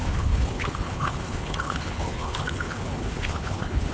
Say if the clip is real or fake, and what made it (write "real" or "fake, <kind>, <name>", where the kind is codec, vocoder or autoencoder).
fake, codec, HILCodec